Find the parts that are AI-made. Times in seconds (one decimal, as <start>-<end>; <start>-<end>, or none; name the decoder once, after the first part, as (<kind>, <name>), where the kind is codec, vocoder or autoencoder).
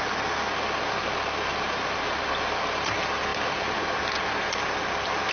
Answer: 1.5-2.2 (vocoder, BigVGAN v2)